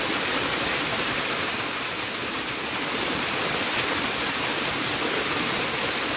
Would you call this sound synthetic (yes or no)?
no